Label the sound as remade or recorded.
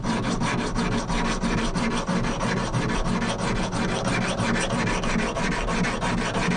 recorded